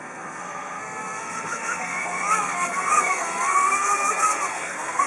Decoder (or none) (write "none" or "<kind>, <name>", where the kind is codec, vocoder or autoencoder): codec, SNAC